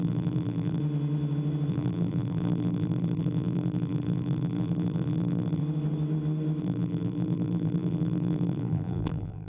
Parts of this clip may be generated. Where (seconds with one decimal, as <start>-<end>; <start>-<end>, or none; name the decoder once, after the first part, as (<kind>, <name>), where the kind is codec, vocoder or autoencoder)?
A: 0.0-0.8 (vocoder, BigVGAN v2); 1.7-5.6; 6.6-9.5